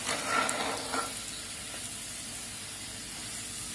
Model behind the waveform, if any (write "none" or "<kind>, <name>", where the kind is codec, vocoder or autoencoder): none